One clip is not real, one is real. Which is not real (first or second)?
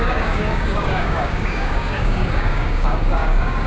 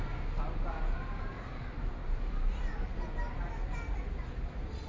first